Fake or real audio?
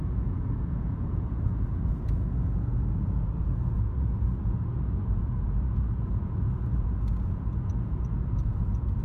fake